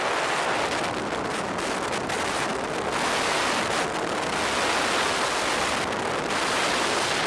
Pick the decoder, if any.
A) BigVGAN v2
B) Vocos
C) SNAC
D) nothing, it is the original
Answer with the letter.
D